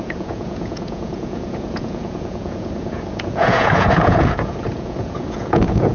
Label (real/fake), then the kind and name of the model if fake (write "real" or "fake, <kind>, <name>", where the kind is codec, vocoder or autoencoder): fake, vocoder, Vocos